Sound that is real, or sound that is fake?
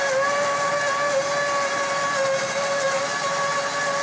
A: real